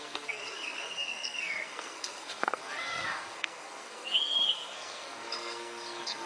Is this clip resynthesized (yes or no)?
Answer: yes